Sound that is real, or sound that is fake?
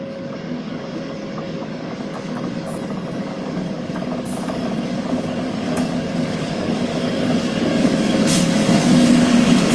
fake